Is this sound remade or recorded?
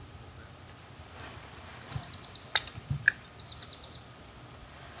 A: recorded